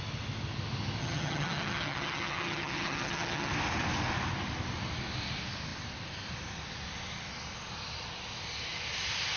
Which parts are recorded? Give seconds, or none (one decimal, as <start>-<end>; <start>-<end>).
0.0-1.0; 3.5-9.4